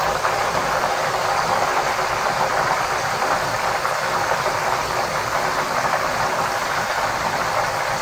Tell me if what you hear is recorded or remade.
recorded